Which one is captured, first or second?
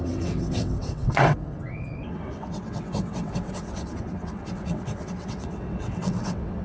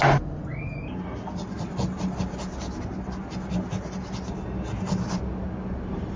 second